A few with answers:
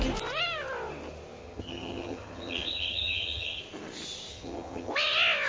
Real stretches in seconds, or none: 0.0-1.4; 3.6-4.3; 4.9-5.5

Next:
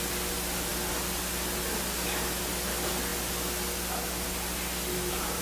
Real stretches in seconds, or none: 0.0-5.4

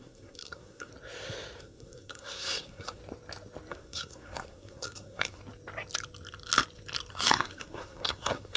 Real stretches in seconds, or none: 0.9-1.6; 3.0-3.7; 5.4-7.1

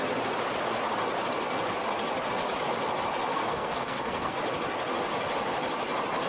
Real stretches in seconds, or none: 0.0-3.3; 4.4-6.3

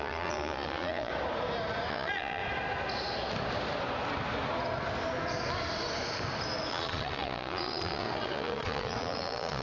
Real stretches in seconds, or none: 1.1-1.9; 2.4-6.7